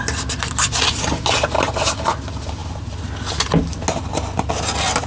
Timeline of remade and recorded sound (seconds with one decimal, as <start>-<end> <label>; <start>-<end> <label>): 0.0-5.1 recorded